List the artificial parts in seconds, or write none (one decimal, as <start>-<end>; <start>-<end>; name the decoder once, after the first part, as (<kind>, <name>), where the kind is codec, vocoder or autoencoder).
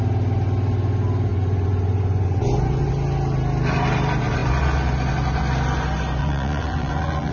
1.3-2.9 (vocoder, Vocos); 6.2-7.3